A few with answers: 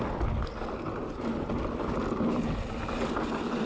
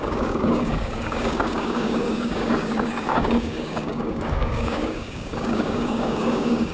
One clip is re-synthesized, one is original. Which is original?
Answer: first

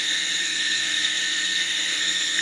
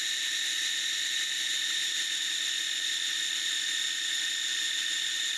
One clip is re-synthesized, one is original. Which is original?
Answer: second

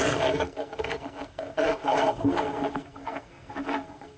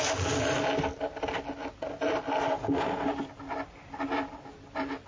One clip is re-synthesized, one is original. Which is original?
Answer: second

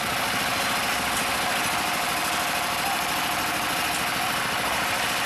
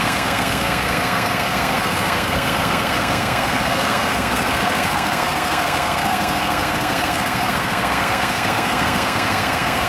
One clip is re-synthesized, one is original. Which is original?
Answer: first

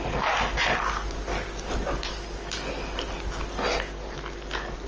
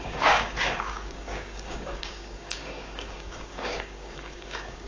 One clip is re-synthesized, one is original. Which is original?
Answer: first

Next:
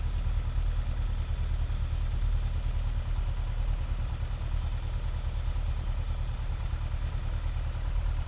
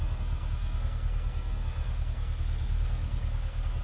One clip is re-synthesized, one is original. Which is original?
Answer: first